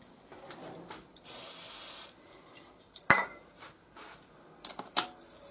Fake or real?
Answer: real